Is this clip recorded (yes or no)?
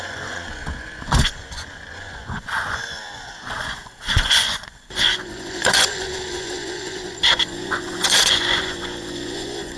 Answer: no